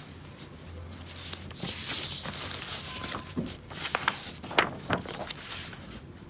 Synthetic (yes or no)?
no